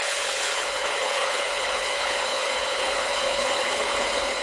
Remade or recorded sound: remade